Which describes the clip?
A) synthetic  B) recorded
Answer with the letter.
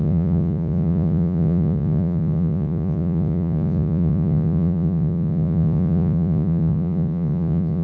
A